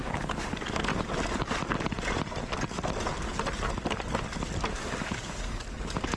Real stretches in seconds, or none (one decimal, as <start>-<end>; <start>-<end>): 0.9-4.6